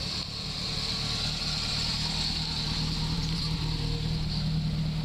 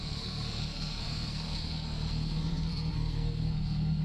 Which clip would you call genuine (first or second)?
first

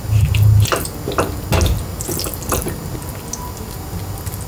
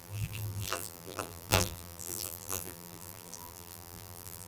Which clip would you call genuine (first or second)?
first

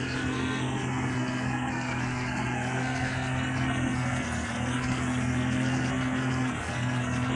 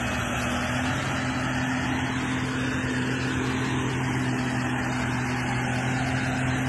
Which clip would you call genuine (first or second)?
second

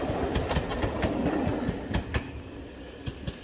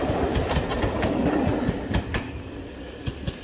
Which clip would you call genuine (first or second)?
first